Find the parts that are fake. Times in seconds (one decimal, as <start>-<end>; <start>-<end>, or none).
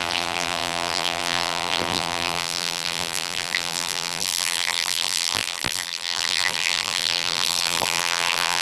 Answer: 0.0-8.6